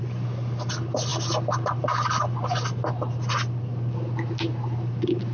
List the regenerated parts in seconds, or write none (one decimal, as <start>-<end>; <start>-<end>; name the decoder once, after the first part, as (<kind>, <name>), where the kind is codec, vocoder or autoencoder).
none